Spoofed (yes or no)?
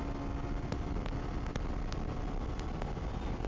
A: no